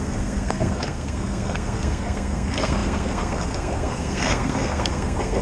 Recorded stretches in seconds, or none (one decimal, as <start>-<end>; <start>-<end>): none